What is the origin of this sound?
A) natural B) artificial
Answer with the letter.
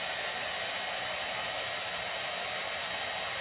A